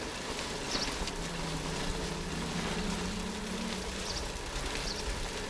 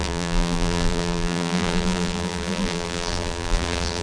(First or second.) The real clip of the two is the first